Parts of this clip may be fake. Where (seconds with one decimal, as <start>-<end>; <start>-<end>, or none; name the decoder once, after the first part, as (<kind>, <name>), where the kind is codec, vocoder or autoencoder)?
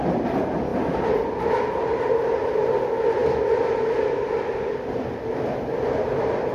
none